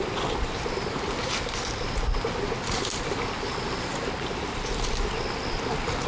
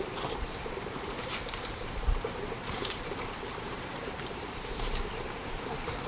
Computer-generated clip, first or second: second